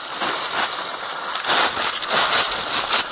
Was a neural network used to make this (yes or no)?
no